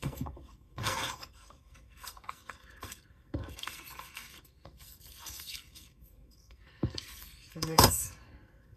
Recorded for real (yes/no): no